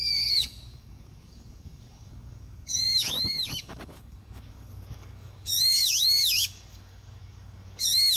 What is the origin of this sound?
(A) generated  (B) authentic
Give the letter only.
A